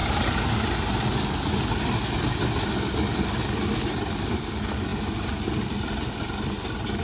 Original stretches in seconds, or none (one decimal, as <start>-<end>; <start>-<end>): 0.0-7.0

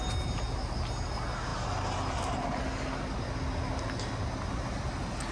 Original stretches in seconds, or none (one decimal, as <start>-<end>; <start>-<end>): 0.0-5.3

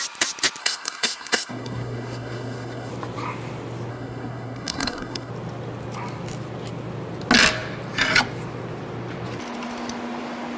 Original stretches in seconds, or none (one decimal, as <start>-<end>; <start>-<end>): 0.0-0.6; 2.9-3.9; 5.3-10.6

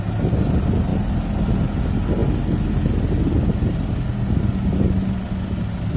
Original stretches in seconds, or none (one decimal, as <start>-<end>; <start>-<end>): 0.0-6.0

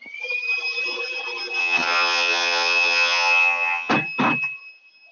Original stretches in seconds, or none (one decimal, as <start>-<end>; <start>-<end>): 0.0-1.6; 3.9-5.1

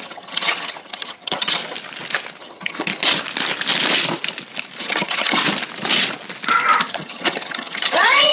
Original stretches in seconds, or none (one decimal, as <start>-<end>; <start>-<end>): 1.6-2.4; 2.9-4.8; 5.4-6.9

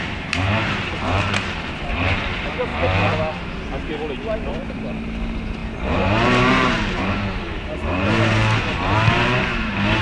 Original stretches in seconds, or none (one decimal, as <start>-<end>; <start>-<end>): 2.7-4.5

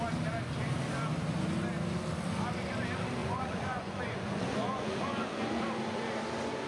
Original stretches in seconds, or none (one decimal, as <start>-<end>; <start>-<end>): 0.0-3.2; 5.6-6.7